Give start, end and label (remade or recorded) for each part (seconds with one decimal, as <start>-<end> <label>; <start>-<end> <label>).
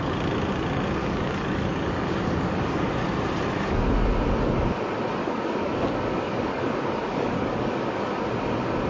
0.0-1.0 recorded; 1.0-2.9 remade; 2.9-5.2 recorded; 5.2-8.2 remade; 8.2-8.9 recorded